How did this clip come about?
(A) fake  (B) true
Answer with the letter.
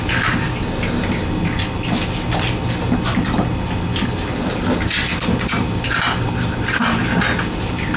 B